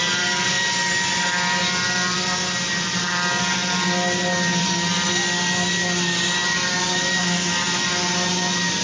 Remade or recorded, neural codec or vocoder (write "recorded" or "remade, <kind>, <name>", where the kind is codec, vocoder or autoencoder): recorded